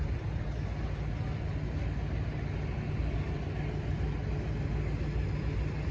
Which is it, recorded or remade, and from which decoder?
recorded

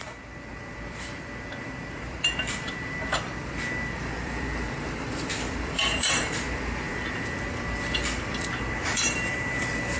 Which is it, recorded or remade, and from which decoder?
remade, vocoder, BigVGAN v2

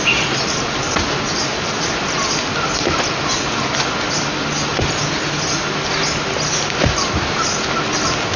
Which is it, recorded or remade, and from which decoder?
recorded